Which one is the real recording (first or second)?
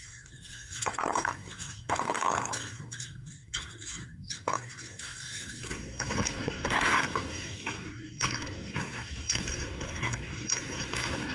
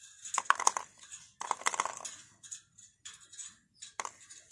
second